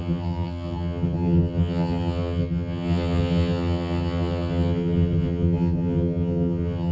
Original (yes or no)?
no